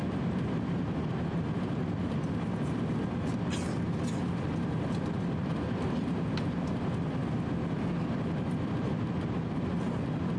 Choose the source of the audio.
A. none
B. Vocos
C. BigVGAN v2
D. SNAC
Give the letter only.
A